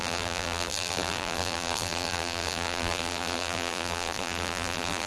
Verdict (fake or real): fake